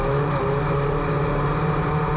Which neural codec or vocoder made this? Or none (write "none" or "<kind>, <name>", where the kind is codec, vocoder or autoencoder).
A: none